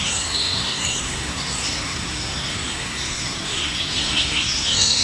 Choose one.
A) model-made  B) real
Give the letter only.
A